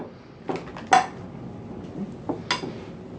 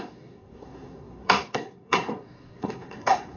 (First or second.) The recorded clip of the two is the first